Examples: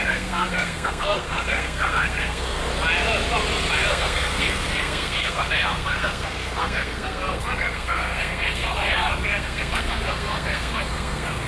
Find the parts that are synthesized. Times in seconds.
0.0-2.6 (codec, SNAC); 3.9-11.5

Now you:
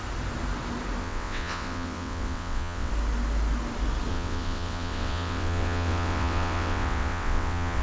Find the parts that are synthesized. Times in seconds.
1.0-2.9 (vocoder, WaveNeXt); 4.1-7.8

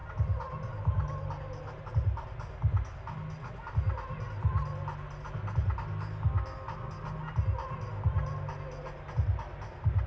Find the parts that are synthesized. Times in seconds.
none